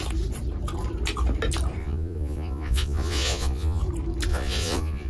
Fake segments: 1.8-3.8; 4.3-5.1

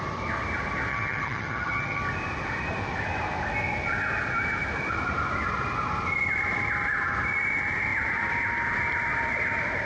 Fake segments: 0.9-2.0

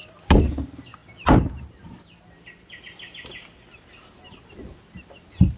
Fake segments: none

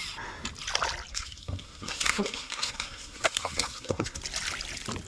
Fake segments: 1.1-4.2

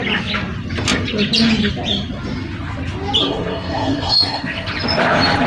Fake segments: 3.2-4.7